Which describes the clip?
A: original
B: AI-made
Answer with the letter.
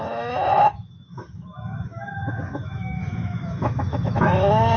B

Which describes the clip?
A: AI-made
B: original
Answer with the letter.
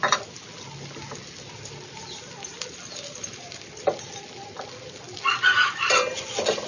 B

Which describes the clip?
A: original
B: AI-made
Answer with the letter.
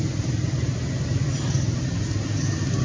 A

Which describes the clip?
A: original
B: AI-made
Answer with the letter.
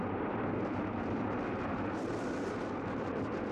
A